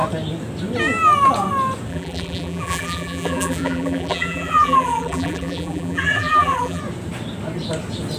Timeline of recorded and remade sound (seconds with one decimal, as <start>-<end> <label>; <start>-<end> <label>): 0.0-1.9 recorded; 1.9-6.8 remade; 6.8-8.2 recorded